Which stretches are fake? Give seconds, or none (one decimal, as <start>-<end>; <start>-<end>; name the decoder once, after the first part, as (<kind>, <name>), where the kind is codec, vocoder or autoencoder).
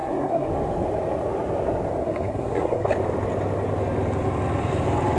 0.0-0.5 (codec, SNAC); 2.0-2.9